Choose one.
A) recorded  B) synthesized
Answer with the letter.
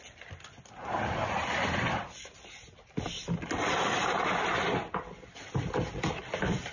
A